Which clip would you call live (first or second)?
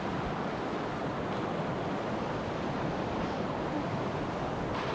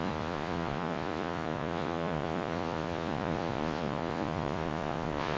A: first